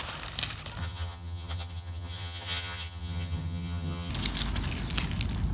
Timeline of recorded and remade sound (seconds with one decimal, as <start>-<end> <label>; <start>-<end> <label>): 0.0-0.8 recorded; 0.8-4.1 remade; 4.1-5.5 recorded